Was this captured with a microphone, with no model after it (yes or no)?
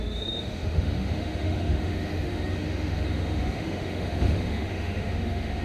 no